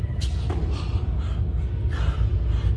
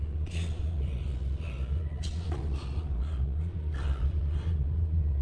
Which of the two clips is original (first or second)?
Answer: first